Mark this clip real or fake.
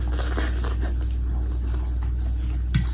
real